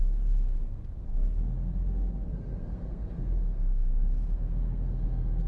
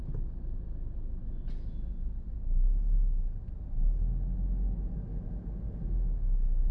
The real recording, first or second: second